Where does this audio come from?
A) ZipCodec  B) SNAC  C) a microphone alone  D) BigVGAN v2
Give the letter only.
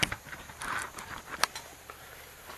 C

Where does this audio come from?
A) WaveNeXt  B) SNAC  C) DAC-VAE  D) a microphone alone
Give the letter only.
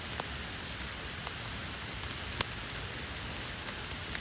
D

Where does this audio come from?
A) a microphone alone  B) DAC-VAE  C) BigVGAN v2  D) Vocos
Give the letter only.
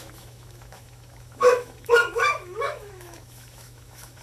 B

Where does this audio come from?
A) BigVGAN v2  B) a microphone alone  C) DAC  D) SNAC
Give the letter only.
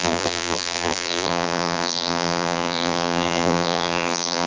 A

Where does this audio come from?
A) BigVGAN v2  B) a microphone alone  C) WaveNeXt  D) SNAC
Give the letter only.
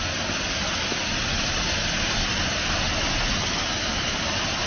B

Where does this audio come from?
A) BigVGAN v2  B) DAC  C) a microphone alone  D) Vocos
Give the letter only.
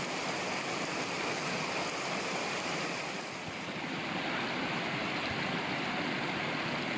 C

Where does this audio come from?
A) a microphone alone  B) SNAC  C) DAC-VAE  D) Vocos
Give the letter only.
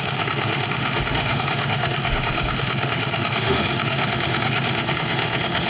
C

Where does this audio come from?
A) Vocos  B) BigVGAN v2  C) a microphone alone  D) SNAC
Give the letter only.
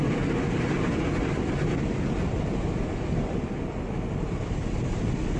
C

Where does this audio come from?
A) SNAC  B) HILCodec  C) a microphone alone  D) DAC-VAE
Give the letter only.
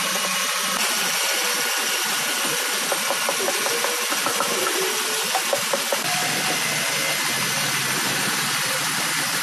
C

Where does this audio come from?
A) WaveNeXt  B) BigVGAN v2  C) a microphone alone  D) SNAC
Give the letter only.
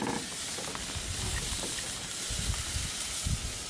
C